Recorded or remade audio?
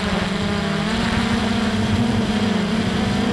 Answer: recorded